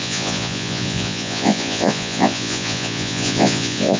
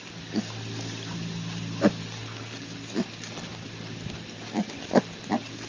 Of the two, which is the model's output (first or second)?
first